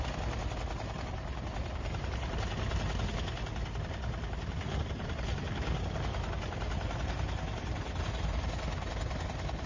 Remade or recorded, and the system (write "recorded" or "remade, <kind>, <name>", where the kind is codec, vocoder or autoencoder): recorded